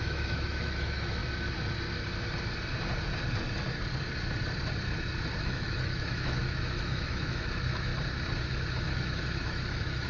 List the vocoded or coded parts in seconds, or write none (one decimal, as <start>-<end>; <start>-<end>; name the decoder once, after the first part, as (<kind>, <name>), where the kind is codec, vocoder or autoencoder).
0.0-1.2 (autoencoder, DAC-VAE); 5.4-7.9; 8.4-10.1

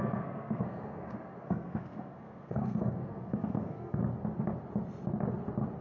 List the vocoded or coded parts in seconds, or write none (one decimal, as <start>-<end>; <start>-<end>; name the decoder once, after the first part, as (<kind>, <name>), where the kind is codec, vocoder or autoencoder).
0.0-4.0 (codec, SNAC)

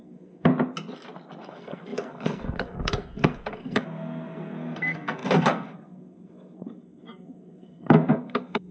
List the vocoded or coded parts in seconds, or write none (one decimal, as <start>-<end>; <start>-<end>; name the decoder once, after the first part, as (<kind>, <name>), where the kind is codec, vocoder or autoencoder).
0.0-0.5 (codec, SNAC); 1.5-8.7

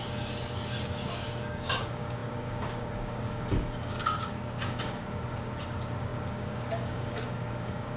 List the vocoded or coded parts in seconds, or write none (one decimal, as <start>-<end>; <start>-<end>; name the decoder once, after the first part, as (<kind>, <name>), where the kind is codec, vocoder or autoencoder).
0.0-8.0 (codec, DAC)

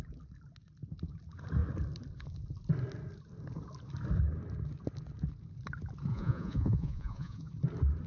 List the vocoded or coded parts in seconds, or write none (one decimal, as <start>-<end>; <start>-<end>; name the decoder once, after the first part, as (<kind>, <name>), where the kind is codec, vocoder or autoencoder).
6.1-7.5 (vocoder, Vocos)

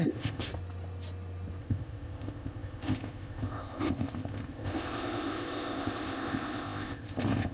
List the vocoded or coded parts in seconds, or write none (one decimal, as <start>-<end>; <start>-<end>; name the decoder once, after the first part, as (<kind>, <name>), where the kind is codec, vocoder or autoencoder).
0.0-0.5 (codec, ZipCodec); 1.6-7.5